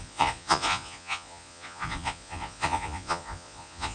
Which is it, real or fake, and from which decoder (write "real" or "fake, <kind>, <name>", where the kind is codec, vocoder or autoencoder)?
fake, vocoder, Vocos